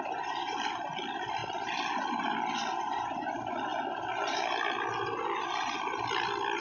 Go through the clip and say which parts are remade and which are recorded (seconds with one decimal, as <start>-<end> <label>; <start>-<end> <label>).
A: 0.0-6.6 recorded